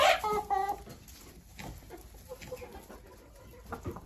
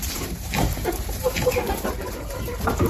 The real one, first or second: first